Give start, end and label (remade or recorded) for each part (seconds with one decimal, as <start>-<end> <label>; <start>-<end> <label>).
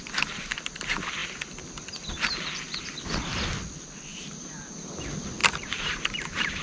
0.0-4.1 recorded; 4.1-4.9 remade; 4.9-5.4 recorded; 5.4-6.6 remade